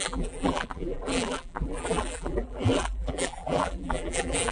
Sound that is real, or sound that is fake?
fake